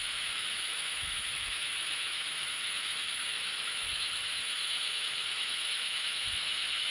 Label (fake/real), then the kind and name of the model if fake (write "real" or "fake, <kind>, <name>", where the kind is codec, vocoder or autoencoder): fake, autoencoder, DAC-VAE